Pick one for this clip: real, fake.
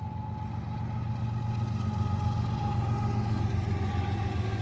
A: real